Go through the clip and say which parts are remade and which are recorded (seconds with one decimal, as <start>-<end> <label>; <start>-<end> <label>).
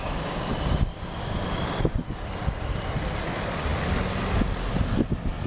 0.0-0.5 remade; 0.5-0.9 recorded; 0.9-1.8 remade; 1.8-5.5 recorded